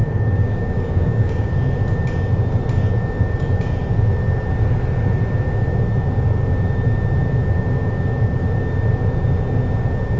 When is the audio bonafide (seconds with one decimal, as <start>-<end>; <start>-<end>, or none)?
1.5-10.2